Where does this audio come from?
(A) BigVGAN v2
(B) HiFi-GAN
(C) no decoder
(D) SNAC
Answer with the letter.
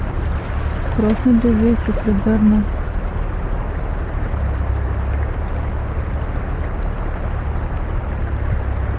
C